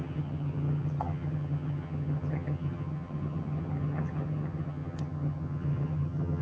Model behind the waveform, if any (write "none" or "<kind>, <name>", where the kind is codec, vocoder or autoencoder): vocoder, HiFi-GAN